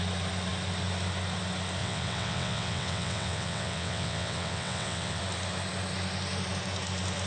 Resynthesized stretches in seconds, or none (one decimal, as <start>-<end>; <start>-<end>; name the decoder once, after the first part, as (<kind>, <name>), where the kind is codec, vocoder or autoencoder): 1.8-5.2 (vocoder, WaveNeXt)